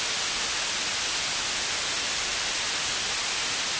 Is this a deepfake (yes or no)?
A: no